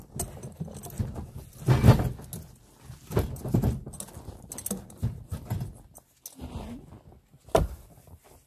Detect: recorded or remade recorded